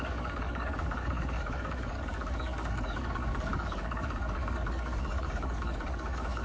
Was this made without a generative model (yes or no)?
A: no